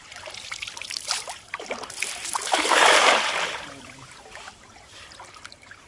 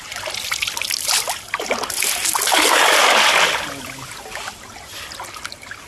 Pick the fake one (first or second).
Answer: first